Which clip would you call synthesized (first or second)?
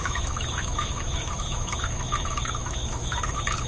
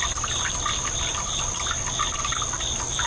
first